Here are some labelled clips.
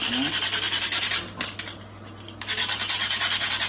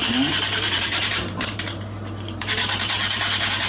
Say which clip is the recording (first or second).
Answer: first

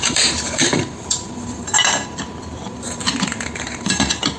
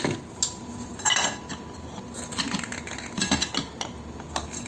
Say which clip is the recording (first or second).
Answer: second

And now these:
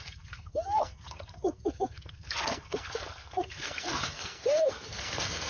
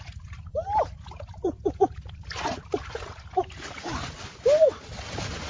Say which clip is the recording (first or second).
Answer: second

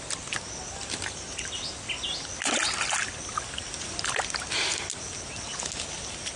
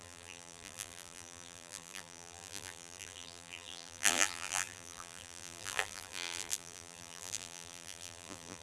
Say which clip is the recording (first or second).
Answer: first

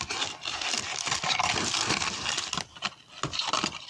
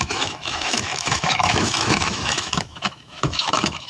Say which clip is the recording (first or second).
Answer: first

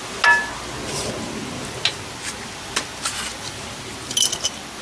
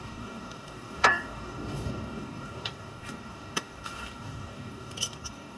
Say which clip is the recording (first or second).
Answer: first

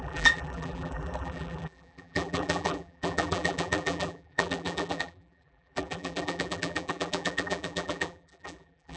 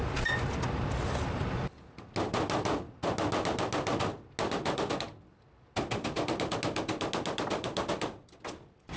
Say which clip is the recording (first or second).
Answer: second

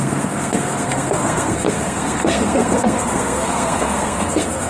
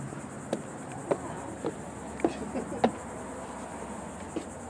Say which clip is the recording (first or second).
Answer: second